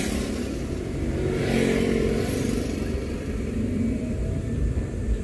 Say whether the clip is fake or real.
fake